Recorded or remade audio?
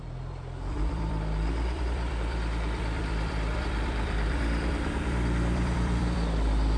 remade